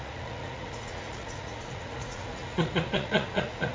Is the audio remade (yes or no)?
yes